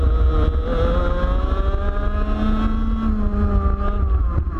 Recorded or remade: recorded